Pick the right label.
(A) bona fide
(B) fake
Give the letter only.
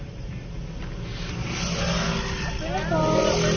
A